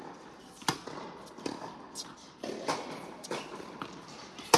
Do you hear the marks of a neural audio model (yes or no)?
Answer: no